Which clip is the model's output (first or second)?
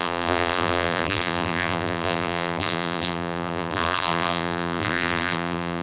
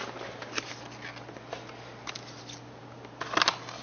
first